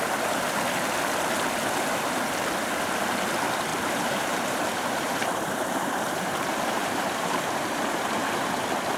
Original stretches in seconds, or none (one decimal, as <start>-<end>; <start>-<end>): 0.0-3.7; 8.5-9.0